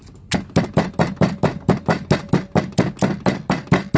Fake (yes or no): no